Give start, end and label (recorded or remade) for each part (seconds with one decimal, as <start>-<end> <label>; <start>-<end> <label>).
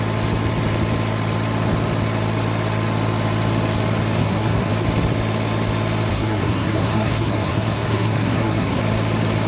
0.0-4.2 recorded; 4.2-4.7 remade; 4.7-6.1 recorded; 6.1-8.8 remade; 8.8-9.5 recorded